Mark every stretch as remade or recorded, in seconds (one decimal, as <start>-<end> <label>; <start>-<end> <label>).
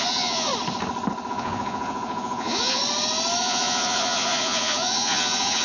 0.0-0.5 remade; 0.5-1.3 recorded; 1.3-2.8 remade; 2.8-3.4 recorded; 3.4-5.6 remade